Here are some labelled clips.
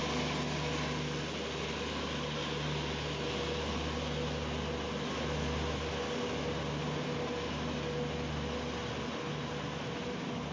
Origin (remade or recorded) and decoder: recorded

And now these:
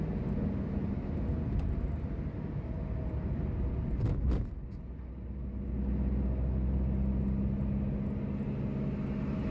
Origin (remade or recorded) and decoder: recorded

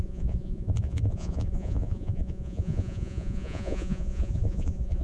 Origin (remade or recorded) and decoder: remade, vocoder, Vocos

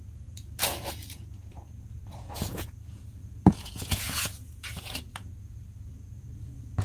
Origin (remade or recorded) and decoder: remade, vocoder, Vocos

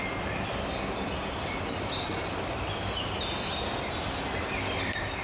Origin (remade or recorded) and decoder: recorded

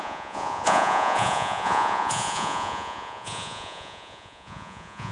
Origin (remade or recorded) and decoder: remade, vocoder, Vocos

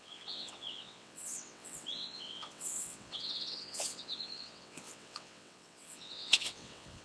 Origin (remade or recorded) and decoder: remade, vocoder, WaveNeXt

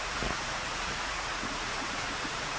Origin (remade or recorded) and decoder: remade, vocoder, Vocos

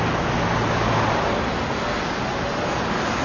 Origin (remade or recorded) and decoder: recorded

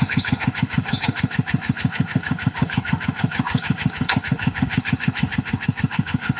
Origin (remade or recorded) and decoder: remade, autoencoder, DAC-VAE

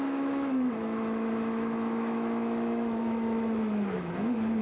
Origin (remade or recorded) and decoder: remade, autoencoder, DAC-VAE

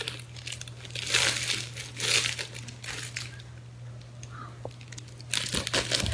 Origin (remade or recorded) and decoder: recorded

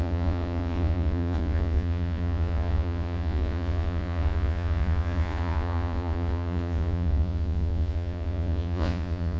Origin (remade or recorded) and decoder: remade, vocoder, Vocos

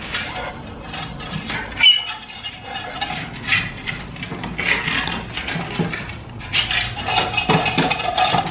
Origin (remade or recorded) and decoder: recorded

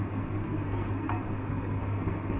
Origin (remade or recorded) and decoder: remade, codec, SNAC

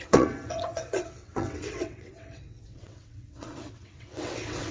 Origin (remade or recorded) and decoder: remade, vocoder, WaveNeXt